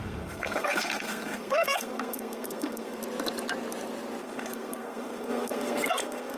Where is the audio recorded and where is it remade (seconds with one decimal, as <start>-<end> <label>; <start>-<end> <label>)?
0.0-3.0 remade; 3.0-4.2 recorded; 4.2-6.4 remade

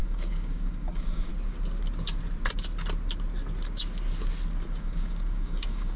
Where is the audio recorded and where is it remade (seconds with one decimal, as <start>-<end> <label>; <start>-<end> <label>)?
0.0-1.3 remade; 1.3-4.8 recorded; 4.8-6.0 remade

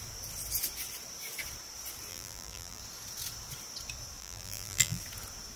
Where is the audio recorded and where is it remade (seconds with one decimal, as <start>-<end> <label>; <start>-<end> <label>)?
0.0-2.1 recorded; 2.1-2.8 remade; 2.8-4.2 recorded; 4.2-5.0 remade; 5.0-5.6 recorded